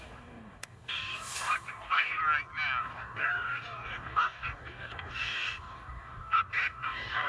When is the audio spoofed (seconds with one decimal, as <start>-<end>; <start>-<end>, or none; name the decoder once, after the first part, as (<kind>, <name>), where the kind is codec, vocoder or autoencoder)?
0.0-2.2 (codec, DAC); 2.8-7.3